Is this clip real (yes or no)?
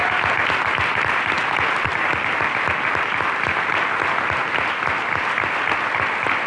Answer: yes